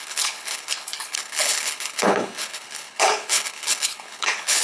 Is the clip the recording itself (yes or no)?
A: no